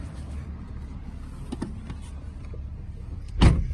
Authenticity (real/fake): real